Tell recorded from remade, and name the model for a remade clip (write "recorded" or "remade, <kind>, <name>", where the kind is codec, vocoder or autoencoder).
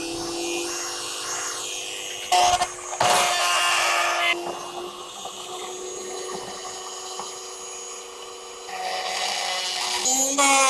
recorded